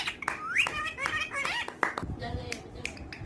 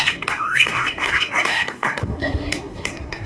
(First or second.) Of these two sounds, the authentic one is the first